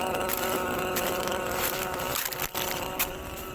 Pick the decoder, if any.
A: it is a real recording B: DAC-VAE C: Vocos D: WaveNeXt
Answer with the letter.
A